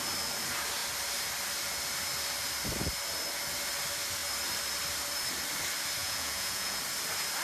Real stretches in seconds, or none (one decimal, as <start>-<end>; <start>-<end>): 0.0-6.0; 6.8-7.4